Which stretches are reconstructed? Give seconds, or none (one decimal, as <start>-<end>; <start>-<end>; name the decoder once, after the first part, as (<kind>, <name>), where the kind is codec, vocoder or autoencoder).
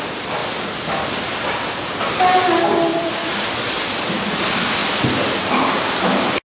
0.4-1.1 (vocoder, BigVGAN v2); 2.9-3.5; 4.8-5.8